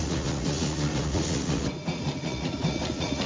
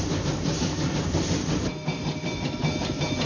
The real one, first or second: second